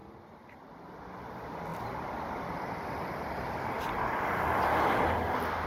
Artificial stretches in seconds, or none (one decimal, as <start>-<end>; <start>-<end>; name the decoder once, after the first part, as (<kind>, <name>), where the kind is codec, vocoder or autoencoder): 1.7-4.9 (vocoder, BigVGAN v2)